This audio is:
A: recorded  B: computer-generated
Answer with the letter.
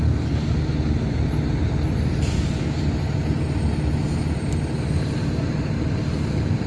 A